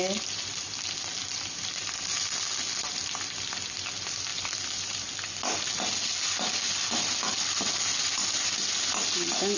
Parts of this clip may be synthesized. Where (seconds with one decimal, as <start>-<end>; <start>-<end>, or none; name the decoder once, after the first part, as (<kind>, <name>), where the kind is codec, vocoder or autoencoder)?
none